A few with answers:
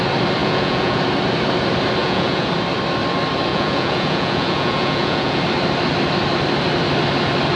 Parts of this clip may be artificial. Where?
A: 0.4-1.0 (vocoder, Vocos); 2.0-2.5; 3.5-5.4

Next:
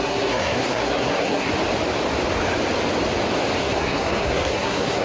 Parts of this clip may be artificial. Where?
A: 0.0-1.5 (codec, SNAC); 3.6-5.0

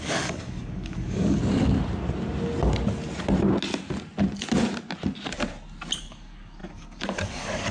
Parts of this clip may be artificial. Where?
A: 0.0-1.4 (codec, DAC); 6.0-7.7

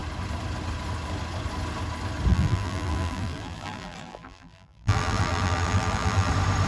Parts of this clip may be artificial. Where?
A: 2.3-6.3 (vocoder, BigVGAN v2)

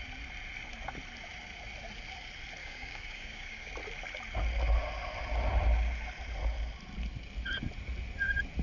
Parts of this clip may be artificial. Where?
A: 2.6-3.7 (codec, DAC)

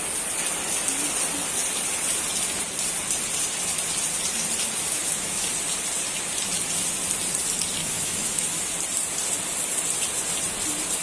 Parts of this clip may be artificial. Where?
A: 4.9-5.5 (autoencoder, DAC-VAE); 7.8-8.6

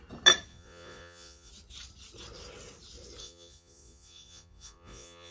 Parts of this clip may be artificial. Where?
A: 0.5-1.5 (vocoder, Vocos); 3.2-5.3

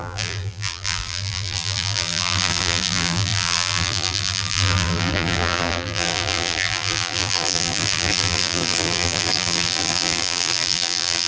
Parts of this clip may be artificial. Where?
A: 0.0-11.3 (vocoder, BigVGAN v2)